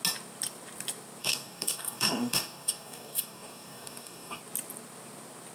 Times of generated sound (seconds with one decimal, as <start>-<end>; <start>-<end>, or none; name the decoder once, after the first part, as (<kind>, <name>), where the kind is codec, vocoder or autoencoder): 1.2-4.4 (codec, DAC)